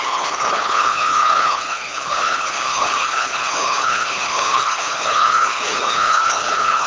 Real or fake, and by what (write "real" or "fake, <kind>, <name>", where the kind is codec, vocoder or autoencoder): fake, codec, HILCodec